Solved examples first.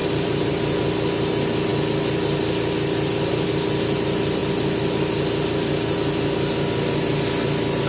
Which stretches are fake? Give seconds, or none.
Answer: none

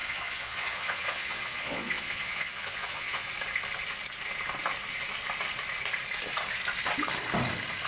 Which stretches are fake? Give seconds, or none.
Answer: 0.0-3.3 (vocoder, Vocos)

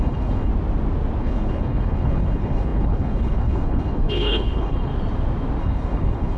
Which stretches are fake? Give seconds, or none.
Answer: 0.0-0.5 (codec, HILCodec); 1.2-4.9; 5.6-6.4

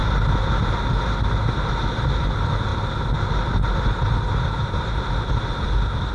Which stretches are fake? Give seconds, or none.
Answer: none

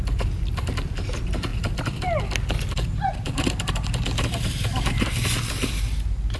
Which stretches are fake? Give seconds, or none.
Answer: none

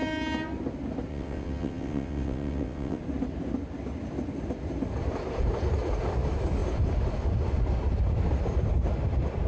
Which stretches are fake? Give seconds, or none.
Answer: 1.1-3.0 (vocoder, WaveNeXt)

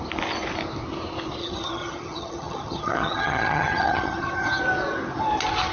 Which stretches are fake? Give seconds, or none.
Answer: 1.4-4.6 (vocoder, HiFi-GAN)